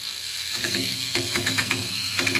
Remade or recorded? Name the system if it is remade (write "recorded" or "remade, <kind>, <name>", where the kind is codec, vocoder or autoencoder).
remade, codec, SNAC